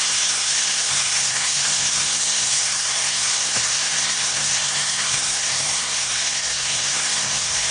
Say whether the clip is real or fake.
fake